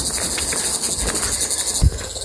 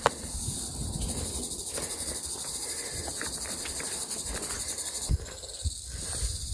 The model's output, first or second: second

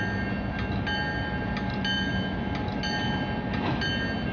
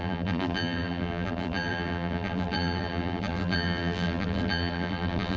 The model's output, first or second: second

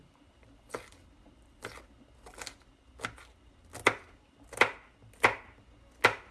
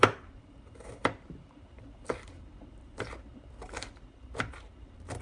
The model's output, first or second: second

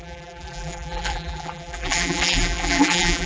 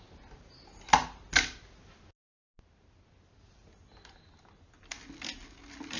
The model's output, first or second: first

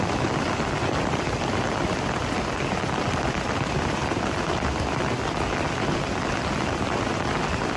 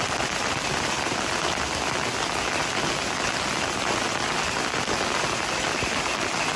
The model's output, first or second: first